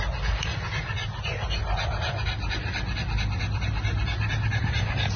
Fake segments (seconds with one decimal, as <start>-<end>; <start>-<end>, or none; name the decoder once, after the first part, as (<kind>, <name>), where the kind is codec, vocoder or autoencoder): none

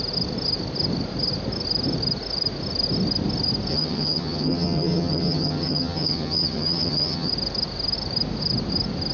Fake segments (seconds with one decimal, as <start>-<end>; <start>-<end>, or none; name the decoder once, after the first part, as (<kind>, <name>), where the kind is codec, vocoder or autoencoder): 3.7-7.3 (vocoder, HiFi-GAN)

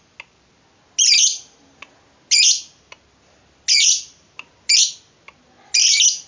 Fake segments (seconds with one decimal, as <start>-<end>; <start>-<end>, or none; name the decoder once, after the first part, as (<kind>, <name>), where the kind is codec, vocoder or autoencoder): none

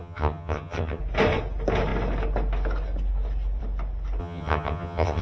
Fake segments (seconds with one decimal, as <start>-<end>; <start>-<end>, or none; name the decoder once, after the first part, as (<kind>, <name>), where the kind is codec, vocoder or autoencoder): 0.0-1.0 (vocoder, HiFi-GAN); 4.2-5.2

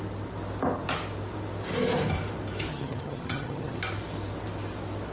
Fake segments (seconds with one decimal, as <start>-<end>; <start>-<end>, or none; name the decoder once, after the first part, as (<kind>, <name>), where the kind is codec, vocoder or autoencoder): 2.7-3.8 (vocoder, HiFi-GAN)